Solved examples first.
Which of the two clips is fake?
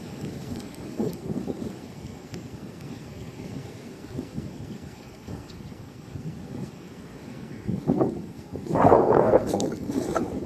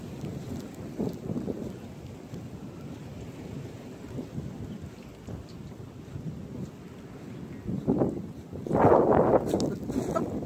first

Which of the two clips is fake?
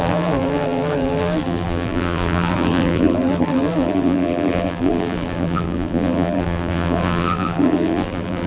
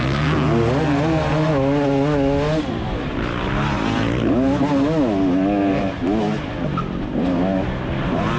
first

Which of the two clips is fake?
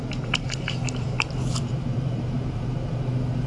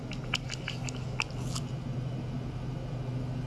first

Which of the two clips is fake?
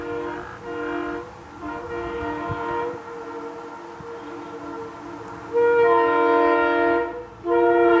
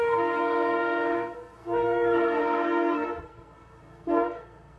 second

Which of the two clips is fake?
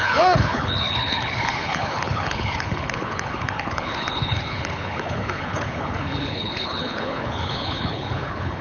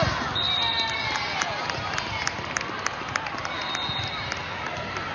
first